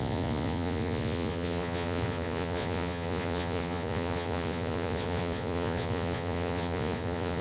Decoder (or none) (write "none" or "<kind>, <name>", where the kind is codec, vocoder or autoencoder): vocoder, Vocos